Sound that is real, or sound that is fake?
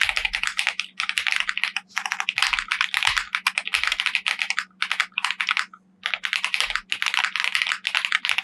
real